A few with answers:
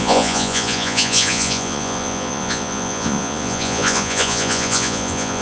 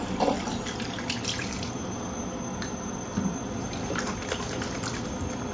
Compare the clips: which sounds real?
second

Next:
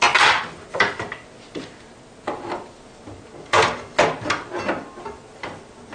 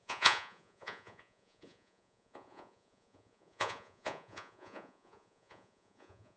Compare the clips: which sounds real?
first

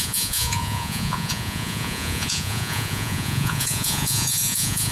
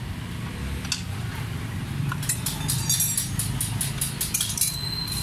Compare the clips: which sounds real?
second